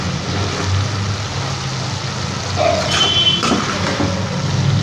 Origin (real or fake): real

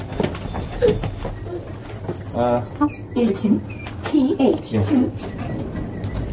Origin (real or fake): real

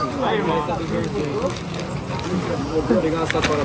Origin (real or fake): real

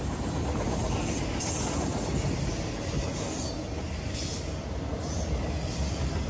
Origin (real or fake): real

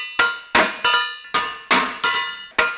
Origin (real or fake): real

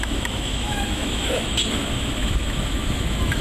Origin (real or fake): fake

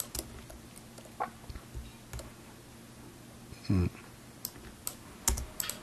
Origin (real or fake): real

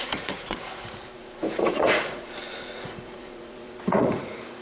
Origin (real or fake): fake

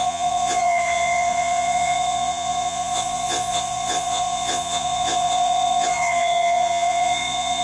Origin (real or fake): fake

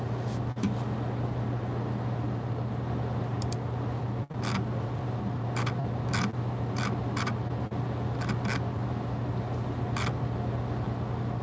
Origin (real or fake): real